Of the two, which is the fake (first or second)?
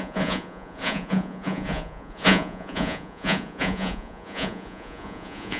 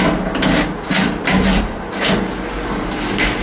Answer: first